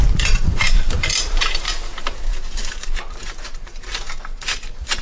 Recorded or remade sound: remade